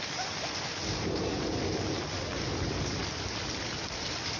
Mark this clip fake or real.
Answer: real